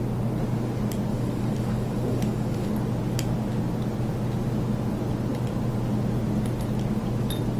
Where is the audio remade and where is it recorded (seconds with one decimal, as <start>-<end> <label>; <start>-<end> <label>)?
0.0-1.1 recorded; 1.1-2.7 remade; 2.7-7.6 recorded